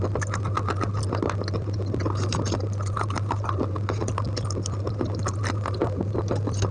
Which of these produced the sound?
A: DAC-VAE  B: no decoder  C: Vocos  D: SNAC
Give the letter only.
B